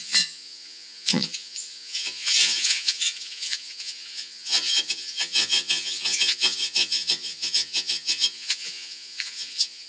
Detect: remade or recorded remade